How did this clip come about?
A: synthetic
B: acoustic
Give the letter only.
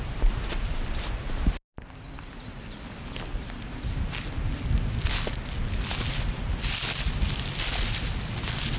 B